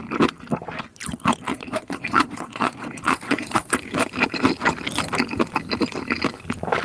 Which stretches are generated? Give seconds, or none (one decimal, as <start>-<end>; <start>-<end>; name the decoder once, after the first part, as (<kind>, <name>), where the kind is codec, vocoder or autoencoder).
1.5-3.7 (vocoder, Vocos)

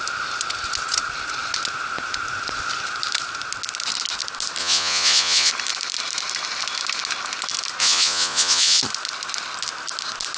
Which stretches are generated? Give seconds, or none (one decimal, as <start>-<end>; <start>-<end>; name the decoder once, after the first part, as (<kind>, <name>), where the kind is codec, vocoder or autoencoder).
4.6-5.5 (vocoder, Vocos); 7.8-8.8

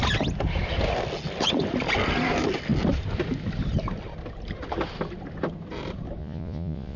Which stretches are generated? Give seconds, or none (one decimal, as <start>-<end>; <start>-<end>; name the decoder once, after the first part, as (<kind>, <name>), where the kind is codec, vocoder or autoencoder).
6.2-7.0 (vocoder, Vocos)

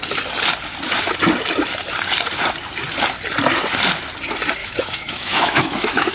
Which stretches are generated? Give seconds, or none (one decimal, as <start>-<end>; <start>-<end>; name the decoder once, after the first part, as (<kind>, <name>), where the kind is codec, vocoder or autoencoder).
4.6-6.1 (autoencoder, DAC-VAE)

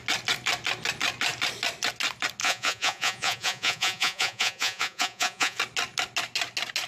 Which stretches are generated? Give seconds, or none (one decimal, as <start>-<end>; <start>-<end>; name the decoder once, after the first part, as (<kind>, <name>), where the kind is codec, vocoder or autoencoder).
2.4-5.6 (vocoder, Vocos)